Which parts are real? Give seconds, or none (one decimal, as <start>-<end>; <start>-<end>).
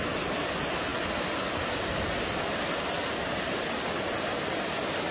0.0-5.1